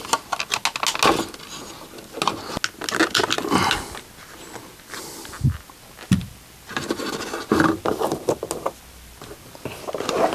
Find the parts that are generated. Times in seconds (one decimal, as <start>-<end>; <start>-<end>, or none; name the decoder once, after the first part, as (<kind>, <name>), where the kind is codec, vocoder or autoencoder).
none